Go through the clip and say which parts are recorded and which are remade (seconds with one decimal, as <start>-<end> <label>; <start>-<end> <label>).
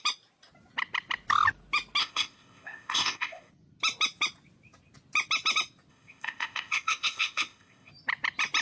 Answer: 0.0-2.0 recorded; 2.0-3.5 remade; 3.5-5.9 recorded; 5.9-7.9 remade; 7.9-8.6 recorded